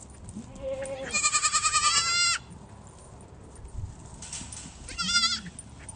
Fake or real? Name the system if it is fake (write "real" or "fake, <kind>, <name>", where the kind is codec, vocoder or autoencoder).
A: real